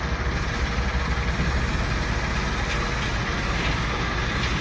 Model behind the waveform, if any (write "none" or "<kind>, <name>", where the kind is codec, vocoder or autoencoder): none